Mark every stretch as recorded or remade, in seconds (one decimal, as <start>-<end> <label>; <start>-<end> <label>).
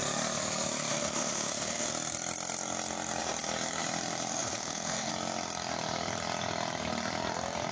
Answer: 0.0-0.9 recorded; 0.9-1.9 remade; 1.9-4.4 recorded; 4.4-5.1 remade; 5.1-7.7 recorded